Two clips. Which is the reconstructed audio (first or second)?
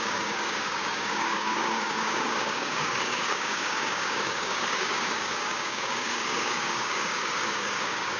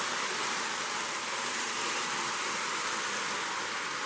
first